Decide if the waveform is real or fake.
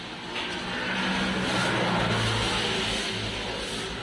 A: real